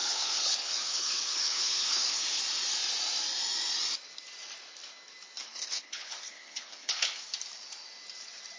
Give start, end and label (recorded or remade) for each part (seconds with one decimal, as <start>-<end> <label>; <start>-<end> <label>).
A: 0.0-2.4 remade; 2.4-5.4 recorded; 5.4-7.2 remade; 7.2-8.6 recorded